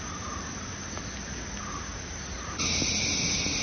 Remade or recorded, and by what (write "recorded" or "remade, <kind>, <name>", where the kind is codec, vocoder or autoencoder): recorded